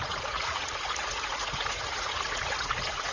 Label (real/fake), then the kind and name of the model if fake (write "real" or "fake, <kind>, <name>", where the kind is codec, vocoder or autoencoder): fake, vocoder, Vocos